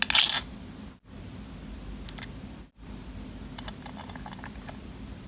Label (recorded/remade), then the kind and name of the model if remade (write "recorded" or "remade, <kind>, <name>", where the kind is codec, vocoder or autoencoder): recorded